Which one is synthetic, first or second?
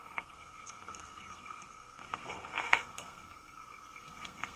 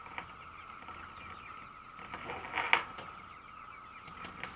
first